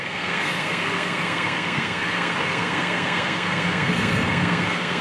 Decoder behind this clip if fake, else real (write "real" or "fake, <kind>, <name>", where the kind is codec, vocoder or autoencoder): fake, codec, SNAC